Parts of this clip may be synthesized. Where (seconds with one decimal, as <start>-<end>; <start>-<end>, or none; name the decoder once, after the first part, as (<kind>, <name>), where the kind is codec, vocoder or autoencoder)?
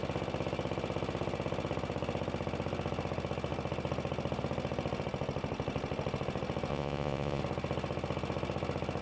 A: 6.7-7.4 (vocoder, Vocos)